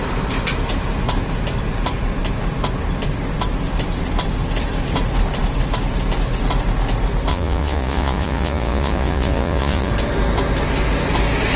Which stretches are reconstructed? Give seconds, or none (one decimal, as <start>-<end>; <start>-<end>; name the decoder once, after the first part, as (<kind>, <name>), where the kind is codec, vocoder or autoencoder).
7.3-9.9 (vocoder, Vocos)